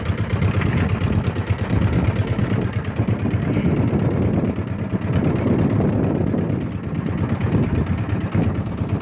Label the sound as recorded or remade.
recorded